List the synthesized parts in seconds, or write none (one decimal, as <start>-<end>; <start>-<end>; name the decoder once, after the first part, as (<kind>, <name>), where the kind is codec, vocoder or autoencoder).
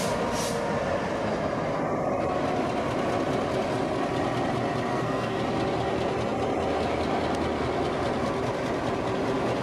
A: 4.9-5.4 (codec, SNAC)